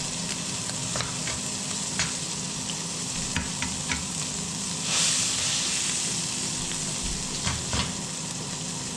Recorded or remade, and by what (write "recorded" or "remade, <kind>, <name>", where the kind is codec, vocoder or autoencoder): recorded